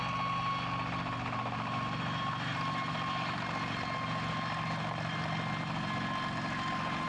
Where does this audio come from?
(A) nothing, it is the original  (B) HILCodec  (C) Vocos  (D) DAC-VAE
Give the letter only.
A